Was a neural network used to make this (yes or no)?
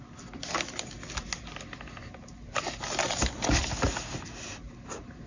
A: no